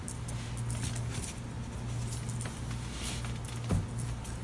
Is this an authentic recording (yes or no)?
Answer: yes